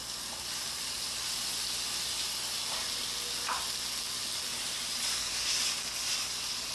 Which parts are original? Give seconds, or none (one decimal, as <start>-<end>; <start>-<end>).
0.0-4.5; 5.6-6.7